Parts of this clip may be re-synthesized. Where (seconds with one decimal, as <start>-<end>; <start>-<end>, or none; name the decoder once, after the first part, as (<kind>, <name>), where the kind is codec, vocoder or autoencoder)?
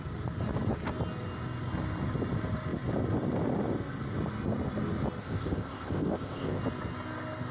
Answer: 5.2-6.6 (codec, ZipCodec)